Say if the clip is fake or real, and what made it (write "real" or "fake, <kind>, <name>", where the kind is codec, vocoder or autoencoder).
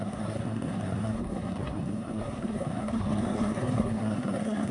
fake, codec, SNAC